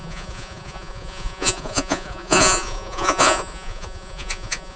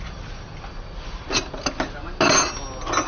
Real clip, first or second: second